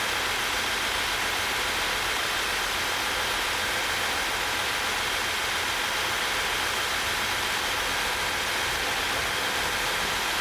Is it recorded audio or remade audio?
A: recorded